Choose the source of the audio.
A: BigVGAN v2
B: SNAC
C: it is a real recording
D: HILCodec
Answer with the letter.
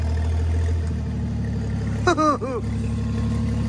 C